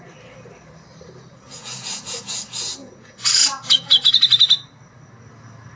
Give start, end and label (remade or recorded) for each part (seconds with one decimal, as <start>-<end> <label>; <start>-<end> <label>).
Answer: 0.0-1.3 recorded; 1.3-2.2 remade; 2.2-2.8 recorded; 2.8-4.1 remade; 4.1-5.8 recorded